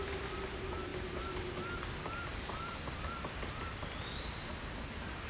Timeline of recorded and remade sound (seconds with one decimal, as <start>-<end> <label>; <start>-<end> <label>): 0.0-2.3 recorded; 2.3-4.5 remade; 4.5-5.3 recorded